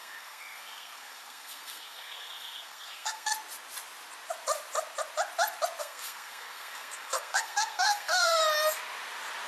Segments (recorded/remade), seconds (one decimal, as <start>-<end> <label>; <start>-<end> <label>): 0.0-3.3 remade; 3.3-5.8 recorded; 5.8-8.4 remade; 8.4-9.5 recorded